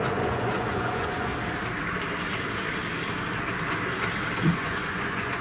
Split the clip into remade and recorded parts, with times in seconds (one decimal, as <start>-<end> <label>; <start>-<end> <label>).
0.0-1.3 remade; 1.3-4.5 recorded; 4.5-5.4 remade